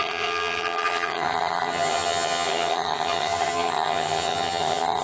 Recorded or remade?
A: remade